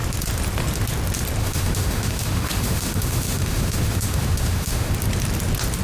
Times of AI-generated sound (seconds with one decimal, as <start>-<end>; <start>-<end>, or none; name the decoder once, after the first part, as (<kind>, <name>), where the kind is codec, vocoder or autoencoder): 1.4-4.9 (autoencoder, DAC-VAE)